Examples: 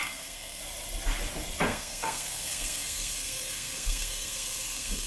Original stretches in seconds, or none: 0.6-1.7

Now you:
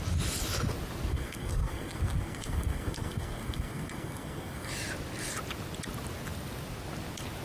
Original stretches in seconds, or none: 0.0-1.1; 4.7-7.4

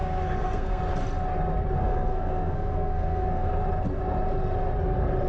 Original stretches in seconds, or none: 0.8-1.8; 3.5-5.3